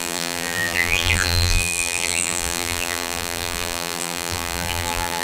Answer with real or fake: fake